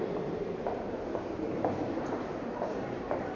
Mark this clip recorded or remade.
remade